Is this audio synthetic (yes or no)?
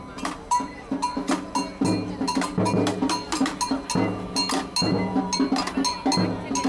no